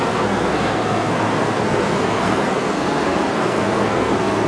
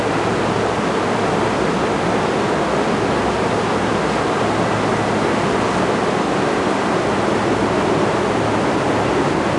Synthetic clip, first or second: first